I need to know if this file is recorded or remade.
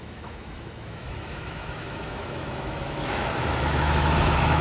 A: remade